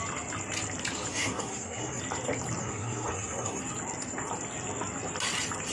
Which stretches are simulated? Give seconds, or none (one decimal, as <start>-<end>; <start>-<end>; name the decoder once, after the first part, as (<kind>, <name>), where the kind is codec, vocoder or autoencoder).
1.1-2.0 (codec, SNAC); 2.6-3.6